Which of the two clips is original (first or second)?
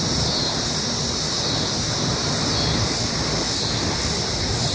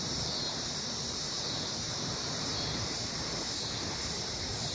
first